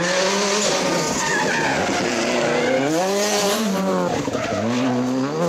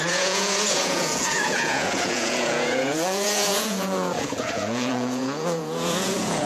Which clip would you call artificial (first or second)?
second